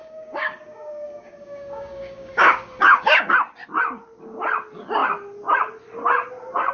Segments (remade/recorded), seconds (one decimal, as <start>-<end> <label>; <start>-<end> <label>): 0.0-3.3 remade; 3.3-6.7 recorded